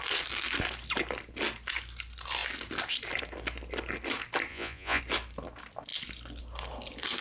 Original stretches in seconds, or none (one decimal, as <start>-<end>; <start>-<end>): 0.0-4.5; 5.0-7.2